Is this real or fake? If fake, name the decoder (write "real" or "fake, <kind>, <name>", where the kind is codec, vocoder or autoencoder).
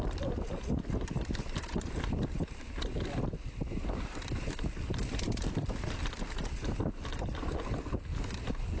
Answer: real